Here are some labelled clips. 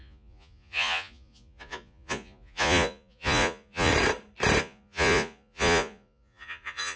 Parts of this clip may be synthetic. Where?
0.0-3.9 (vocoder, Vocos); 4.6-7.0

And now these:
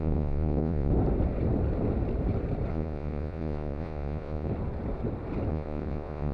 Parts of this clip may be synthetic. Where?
0.0-0.9 (vocoder, Vocos); 2.7-4.5; 5.5-6.3

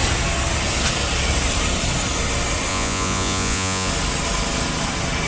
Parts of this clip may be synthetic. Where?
2.7-3.9 (vocoder, Vocos)

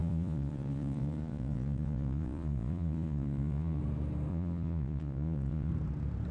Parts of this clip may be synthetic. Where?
0.0-3.8 (vocoder, Vocos); 4.3-5.7